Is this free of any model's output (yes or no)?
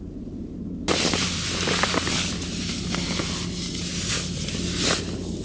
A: yes